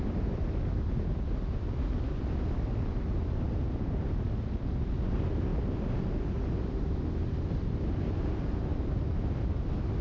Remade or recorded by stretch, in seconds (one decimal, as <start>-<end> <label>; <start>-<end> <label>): 0.0-10.0 recorded